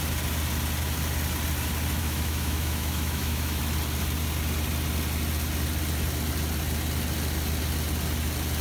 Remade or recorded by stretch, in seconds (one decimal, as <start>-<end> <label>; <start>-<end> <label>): 0.0-2.0 recorded; 2.0-3.6 remade; 3.6-8.6 recorded